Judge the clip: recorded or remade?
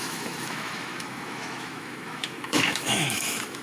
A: remade